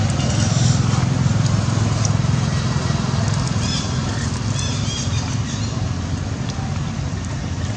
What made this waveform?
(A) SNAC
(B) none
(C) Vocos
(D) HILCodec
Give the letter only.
B